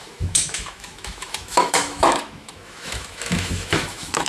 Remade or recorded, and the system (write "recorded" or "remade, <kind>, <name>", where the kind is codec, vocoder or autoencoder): remade, autoencoder, DAC-VAE